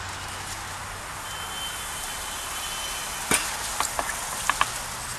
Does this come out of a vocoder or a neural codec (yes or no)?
no